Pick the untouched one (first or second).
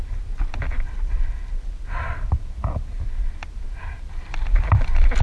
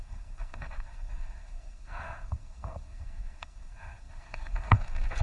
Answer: first